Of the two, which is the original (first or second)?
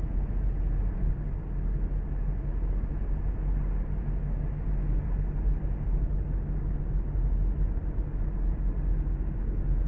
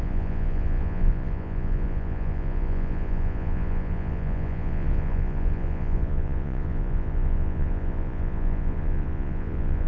first